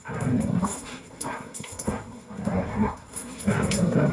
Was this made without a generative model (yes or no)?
no